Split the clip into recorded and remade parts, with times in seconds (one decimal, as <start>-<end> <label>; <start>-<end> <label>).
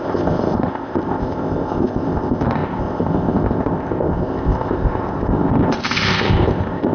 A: 0.0-6.9 remade